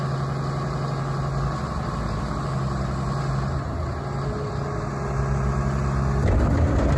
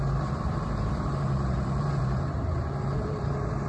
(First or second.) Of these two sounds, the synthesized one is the second